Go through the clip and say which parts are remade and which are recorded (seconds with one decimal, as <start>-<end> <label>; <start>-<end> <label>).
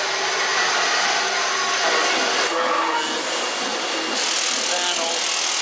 0.0-3.7 recorded; 3.7-4.2 remade; 4.2-5.6 recorded